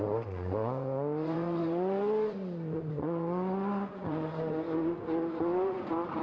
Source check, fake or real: fake